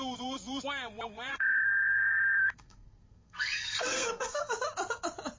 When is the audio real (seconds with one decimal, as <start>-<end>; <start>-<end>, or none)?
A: 0.0-1.3; 4.5-5.4